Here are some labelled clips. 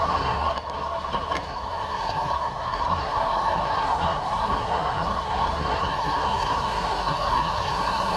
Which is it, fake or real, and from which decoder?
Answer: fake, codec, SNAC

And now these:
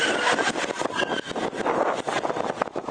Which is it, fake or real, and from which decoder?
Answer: real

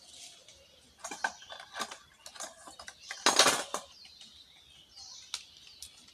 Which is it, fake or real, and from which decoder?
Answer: real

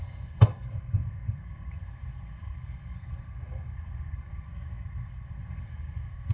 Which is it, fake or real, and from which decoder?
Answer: fake, codec, SNAC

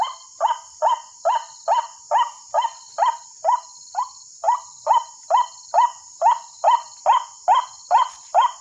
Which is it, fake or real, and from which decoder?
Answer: real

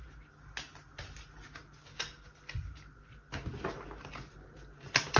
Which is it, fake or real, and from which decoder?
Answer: real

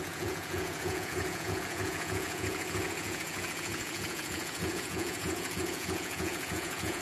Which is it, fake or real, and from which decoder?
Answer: fake, vocoder, Vocos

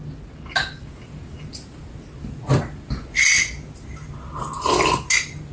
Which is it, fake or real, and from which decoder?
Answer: real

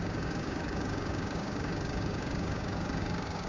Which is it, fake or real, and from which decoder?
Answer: fake, codec, DAC